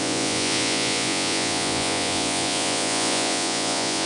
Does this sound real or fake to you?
fake